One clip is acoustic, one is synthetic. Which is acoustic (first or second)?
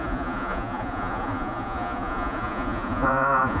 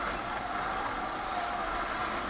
second